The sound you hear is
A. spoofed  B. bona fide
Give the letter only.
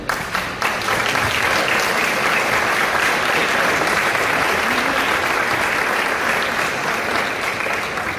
B